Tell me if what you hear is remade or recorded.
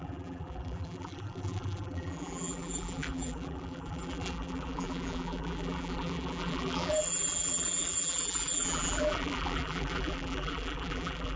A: remade